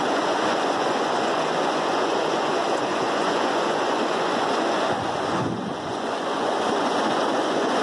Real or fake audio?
fake